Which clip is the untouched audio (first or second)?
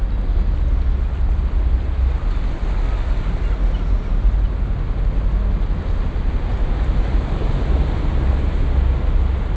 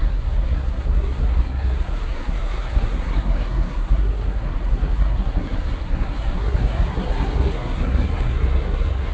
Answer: first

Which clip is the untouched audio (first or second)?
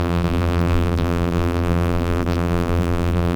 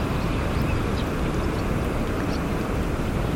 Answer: second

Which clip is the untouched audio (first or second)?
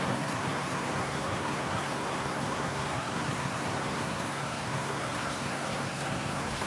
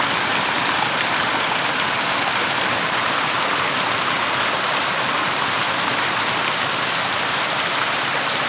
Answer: second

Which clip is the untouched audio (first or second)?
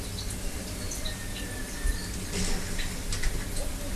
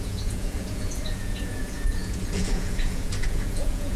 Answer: first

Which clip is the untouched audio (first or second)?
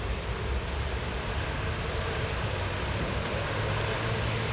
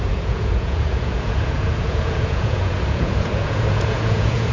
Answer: first